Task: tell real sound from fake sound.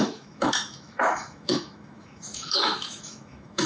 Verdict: fake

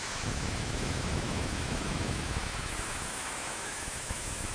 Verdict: fake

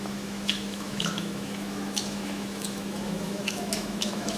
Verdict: fake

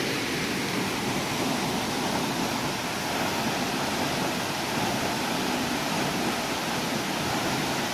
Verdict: real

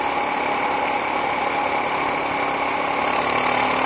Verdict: real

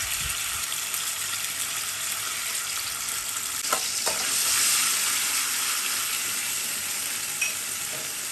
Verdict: real